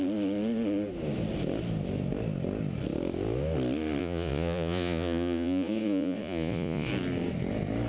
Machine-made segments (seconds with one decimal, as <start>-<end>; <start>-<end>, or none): 4.0-6.9